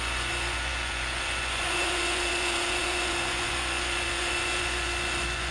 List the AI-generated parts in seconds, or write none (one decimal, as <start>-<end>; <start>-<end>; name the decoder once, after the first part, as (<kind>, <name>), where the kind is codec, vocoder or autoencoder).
0.0-5.5 (vocoder, Vocos)